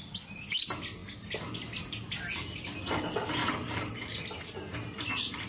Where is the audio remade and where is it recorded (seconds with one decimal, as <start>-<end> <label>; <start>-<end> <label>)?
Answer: 0.0-3.4 recorded; 3.4-3.9 remade; 3.9-5.5 recorded